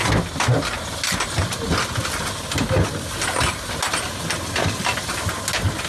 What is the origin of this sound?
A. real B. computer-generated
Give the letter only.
A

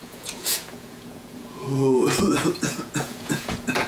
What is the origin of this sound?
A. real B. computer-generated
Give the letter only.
B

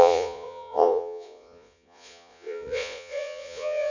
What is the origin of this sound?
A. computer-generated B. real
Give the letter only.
A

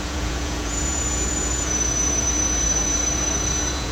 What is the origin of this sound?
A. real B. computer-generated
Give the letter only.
B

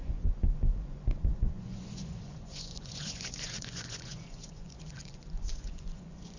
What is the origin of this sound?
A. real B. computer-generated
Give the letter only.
B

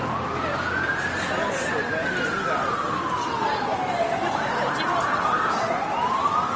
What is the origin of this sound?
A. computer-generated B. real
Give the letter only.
B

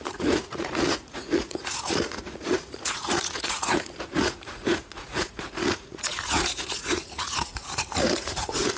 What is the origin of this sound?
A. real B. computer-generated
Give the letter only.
B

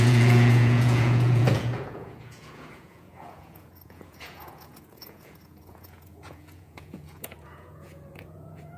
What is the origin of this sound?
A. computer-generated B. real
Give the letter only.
A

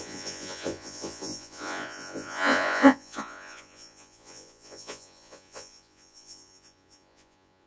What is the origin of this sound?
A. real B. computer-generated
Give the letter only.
B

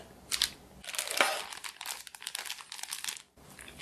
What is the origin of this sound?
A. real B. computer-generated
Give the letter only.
A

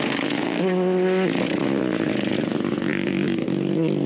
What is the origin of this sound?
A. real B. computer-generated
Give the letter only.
A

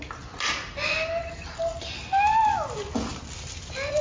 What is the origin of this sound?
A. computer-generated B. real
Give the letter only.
B